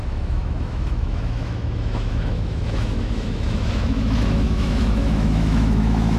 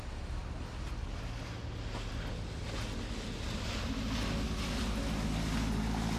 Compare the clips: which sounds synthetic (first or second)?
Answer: first